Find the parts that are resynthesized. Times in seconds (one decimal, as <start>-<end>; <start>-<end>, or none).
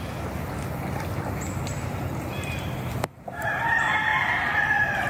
1.7-3.5; 4.1-5.1